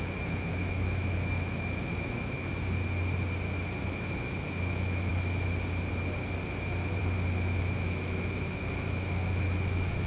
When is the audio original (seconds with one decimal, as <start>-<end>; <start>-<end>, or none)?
2.5-3.8; 5.1-7.0